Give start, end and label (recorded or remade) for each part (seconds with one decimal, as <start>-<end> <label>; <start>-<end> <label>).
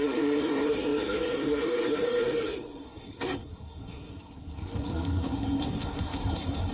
0.0-6.7 remade